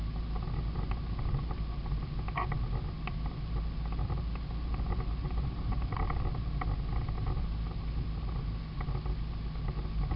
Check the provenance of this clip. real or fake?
real